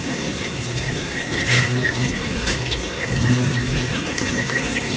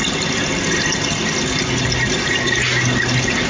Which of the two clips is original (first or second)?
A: second